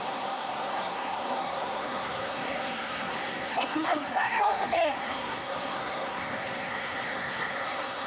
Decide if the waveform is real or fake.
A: fake